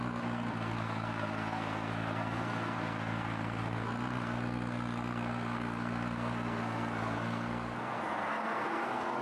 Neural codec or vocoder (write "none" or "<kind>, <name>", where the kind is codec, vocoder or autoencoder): codec, SNAC